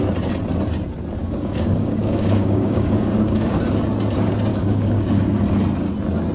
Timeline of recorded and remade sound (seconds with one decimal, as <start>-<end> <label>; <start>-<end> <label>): 0.0-1.2 recorded; 1.2-3.6 remade; 3.6-4.5 recorded; 4.5-5.4 remade; 5.4-6.3 recorded

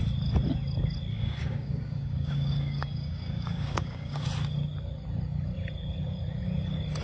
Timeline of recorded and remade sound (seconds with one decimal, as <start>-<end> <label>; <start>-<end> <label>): 0.0-1.1 recorded; 1.1-4.3 remade; 4.3-7.0 recorded

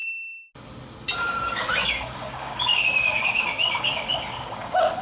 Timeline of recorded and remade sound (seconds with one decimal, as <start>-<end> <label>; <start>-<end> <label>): 0.0-1.6 recorded; 1.6-5.0 remade

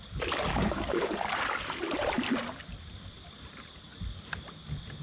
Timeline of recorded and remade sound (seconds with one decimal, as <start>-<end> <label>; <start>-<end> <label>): 0.0-0.5 recorded; 0.5-1.1 remade; 1.1-5.0 recorded